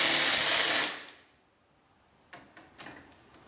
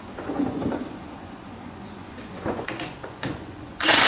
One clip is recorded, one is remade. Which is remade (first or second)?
second